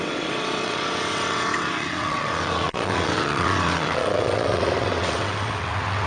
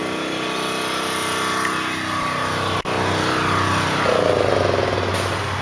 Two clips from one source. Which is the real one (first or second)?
second